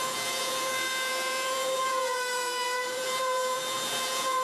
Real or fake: fake